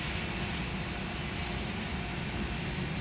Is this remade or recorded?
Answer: recorded